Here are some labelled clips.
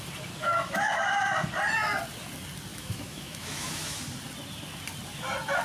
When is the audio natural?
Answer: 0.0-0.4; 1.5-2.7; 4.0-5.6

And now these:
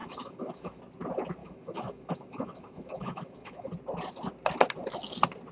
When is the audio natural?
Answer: 0.8-1.4; 3.7-5.5

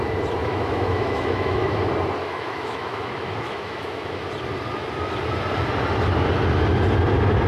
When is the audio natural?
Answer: 0.0-0.4; 1.7-2.2; 4.2-7.5